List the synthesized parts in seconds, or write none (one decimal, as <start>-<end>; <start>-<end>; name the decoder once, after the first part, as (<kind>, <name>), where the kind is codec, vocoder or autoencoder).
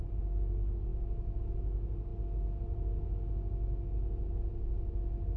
none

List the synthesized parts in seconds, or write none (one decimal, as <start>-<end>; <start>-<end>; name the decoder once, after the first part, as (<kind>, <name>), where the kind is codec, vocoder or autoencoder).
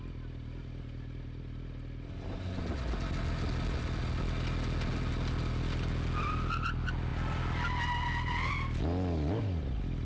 none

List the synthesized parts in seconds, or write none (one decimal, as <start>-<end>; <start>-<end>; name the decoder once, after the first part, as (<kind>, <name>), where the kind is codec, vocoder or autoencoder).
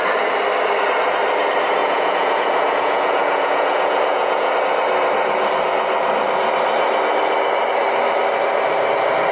1.8-4.5 (vocoder, Vocos)